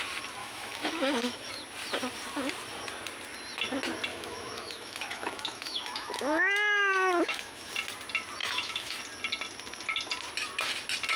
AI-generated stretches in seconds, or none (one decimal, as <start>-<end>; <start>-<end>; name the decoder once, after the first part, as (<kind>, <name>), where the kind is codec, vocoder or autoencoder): 0.4-1.5 (autoencoder, DAC-VAE); 4.1-7.7; 8.4-9.0